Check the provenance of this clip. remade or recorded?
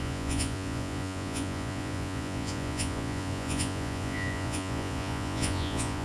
remade